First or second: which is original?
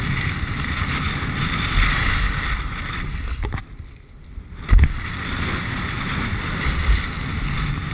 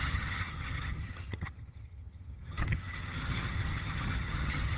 first